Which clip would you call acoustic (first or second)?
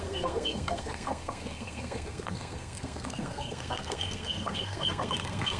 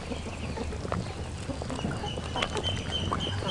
second